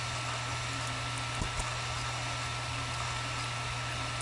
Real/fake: real